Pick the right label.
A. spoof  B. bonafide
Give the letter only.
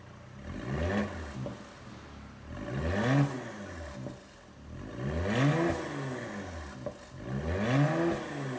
B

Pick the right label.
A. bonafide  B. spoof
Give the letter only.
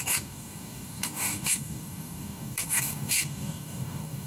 B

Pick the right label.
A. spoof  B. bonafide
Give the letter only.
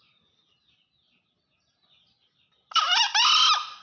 B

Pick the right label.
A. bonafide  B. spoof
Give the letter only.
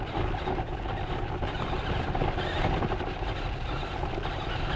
A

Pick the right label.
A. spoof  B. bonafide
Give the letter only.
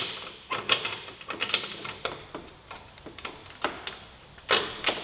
B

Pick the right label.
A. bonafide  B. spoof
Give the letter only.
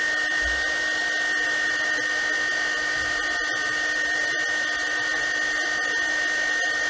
A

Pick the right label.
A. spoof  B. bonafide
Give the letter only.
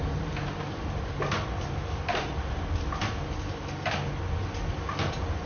B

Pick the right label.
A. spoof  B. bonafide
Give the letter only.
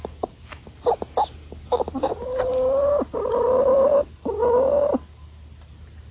B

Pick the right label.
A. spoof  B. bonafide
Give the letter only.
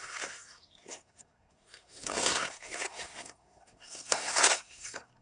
A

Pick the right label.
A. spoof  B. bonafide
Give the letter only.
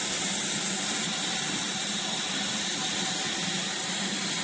B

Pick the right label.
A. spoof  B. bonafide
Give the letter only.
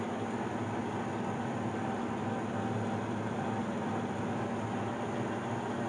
B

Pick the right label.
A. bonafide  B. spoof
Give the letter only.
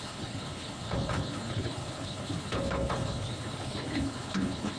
B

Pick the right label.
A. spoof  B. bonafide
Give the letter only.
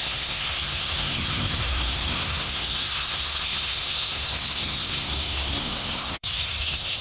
A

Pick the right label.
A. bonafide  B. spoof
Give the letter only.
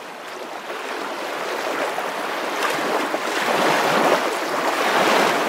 A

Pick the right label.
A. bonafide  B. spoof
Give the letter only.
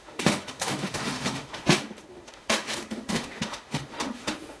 B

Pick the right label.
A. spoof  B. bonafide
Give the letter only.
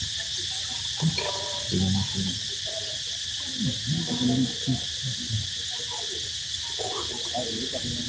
B